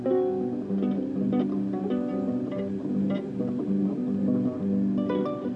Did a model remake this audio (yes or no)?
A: no